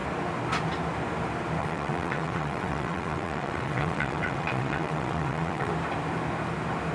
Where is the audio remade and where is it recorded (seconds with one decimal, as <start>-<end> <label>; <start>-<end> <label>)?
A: 0.0-1.6 recorded; 1.6-5.7 remade; 5.7-6.9 recorded